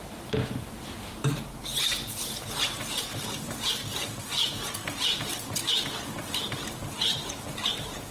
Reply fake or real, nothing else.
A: fake